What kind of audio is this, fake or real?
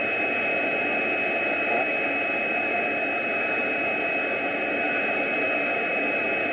real